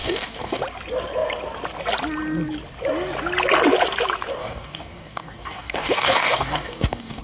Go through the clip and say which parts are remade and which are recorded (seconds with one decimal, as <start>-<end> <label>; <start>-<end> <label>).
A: 0.0-0.6 remade; 0.6-4.4 recorded; 4.4-7.2 remade